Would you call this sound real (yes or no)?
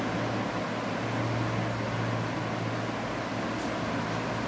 yes